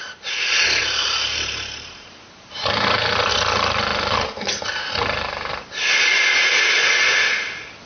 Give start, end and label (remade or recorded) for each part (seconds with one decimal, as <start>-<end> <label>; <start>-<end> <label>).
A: 0.0-0.8 recorded; 0.8-3.3 remade; 3.3-7.9 recorded